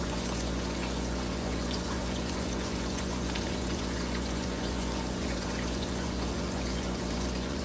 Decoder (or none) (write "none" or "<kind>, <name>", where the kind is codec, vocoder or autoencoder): vocoder, Vocos